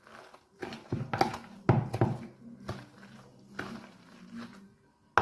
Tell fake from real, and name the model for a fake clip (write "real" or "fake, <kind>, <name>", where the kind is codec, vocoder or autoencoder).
real